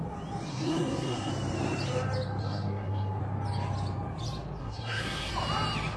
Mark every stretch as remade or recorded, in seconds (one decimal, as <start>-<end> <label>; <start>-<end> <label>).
0.0-0.5 recorded; 0.5-1.3 remade; 1.3-2.4 recorded; 2.4-3.2 remade; 3.2-4.6 recorded; 4.6-5.3 remade; 5.3-6.0 recorded